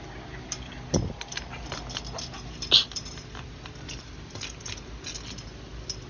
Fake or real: real